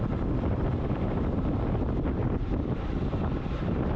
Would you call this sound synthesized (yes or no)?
no